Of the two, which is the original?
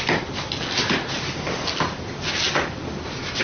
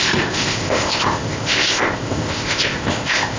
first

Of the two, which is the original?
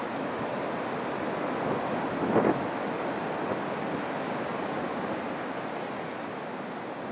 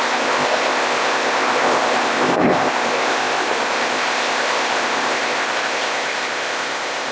first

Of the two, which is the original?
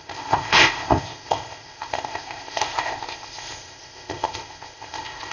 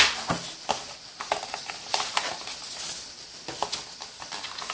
second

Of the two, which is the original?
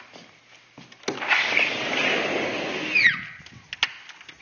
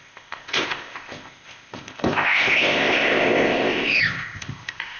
first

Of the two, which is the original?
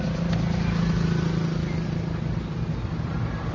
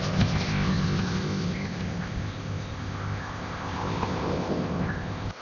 first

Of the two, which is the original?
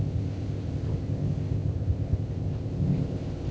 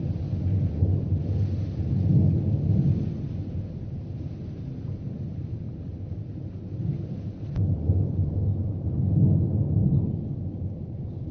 second